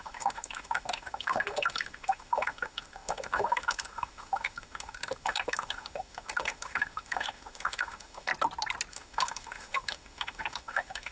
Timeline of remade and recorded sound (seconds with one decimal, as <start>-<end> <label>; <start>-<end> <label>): 0.0-8.3 remade; 8.3-8.9 recorded; 8.9-11.1 remade